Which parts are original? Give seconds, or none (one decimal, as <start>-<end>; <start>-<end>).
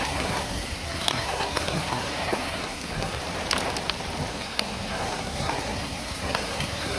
3.2-4.3